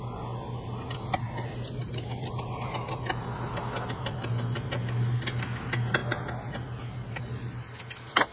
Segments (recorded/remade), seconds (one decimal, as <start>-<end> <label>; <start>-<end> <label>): 0.0-8.3 recorded